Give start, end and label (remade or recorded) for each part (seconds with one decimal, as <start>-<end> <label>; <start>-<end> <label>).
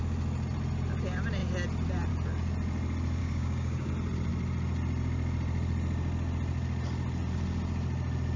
0.0-3.2 recorded; 3.2-3.9 remade; 3.9-8.4 recorded